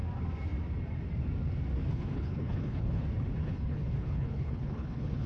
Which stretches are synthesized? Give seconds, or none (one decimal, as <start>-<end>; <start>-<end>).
1.9-3.0; 3.4-5.3